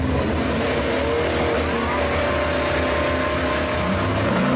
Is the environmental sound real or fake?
real